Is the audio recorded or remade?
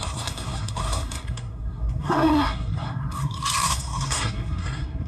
remade